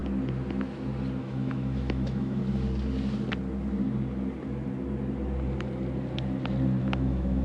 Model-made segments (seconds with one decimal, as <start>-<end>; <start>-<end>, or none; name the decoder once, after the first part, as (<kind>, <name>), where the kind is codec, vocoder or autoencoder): 1.2-2.4 (autoencoder, DAC-VAE); 6.8-7.4